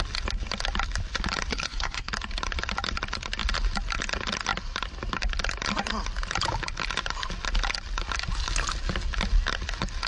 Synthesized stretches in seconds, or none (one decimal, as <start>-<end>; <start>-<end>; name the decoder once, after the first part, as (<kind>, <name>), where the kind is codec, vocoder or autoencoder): 1.5-2.1 (codec, SNAC)